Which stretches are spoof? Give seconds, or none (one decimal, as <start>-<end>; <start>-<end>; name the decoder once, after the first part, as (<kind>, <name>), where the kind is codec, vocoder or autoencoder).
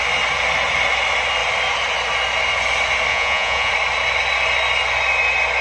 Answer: 3.1-3.7 (vocoder, Vocos)